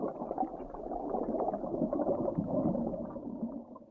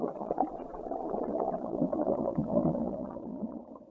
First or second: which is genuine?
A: first